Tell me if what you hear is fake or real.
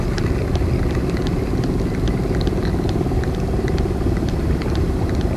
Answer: real